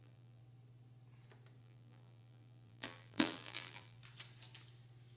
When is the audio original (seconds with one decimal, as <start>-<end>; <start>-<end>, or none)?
0.4-1.6; 4.0-5.2